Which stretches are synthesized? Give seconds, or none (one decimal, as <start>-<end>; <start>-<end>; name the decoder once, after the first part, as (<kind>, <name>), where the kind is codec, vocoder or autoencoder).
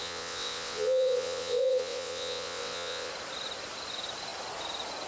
0.0-3.1 (vocoder, WaveNeXt)